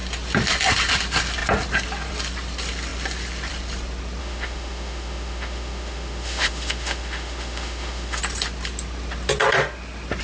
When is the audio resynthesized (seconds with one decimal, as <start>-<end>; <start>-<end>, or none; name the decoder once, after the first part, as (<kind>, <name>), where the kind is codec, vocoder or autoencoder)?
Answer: 4.2-8.2 (autoencoder, DAC-VAE)